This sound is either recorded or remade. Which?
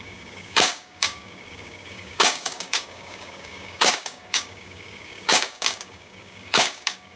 remade